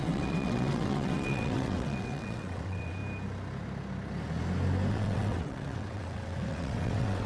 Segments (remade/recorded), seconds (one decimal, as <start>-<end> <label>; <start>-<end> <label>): 0.0-3.0 remade; 3.0-4.9 recorded; 4.9-7.3 remade